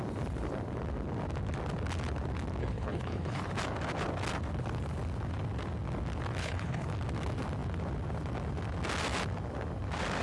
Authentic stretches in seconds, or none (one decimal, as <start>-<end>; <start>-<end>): 0.0-2.6; 3.5-6.4; 6.9-10.2